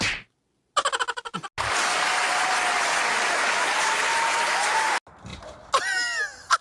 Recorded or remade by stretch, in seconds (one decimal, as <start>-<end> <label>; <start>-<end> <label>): 0.0-6.6 recorded